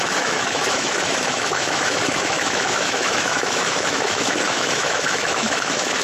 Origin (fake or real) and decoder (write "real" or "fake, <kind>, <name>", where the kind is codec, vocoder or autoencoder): fake, autoencoder, DAC-VAE